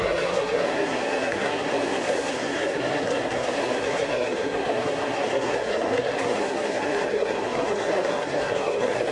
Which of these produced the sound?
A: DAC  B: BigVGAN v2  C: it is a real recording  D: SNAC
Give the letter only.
D